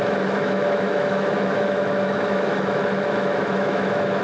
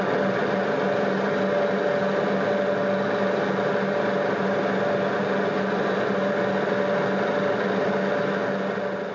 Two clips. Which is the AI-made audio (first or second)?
first